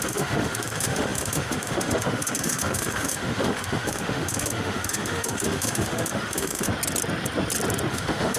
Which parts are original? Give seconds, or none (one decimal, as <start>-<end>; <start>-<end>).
6.7-7.9